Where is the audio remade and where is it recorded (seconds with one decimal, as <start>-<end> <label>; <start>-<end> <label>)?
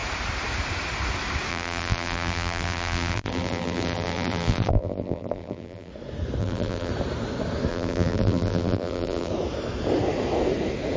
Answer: 0.0-1.5 recorded; 1.5-5.9 remade; 5.9-6.4 recorded; 6.4-6.9 remade; 6.9-7.7 recorded; 7.7-9.3 remade; 9.3-11.0 recorded